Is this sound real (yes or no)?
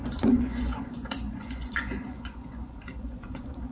no